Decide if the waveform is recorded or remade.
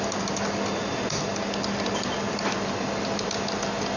recorded